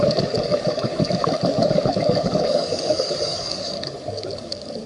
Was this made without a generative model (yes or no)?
no